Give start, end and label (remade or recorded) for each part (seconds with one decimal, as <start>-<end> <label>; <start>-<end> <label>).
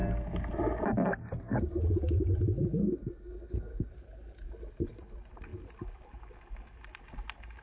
0.0-1.2 recorded; 1.2-1.8 remade; 1.8-2.8 recorded; 2.8-3.9 remade; 3.9-7.6 recorded